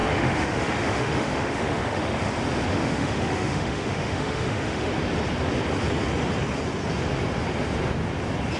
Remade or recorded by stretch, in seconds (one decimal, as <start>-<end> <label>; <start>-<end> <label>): 0.0-2.3 remade; 2.3-2.7 recorded; 2.7-4.9 remade; 4.9-8.6 recorded